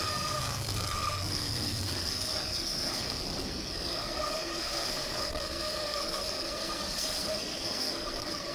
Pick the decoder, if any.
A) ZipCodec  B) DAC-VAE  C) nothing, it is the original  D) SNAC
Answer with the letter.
D